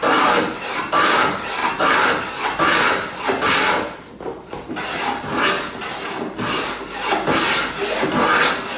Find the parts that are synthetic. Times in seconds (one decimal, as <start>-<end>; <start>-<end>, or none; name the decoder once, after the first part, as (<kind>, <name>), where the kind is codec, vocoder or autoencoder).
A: none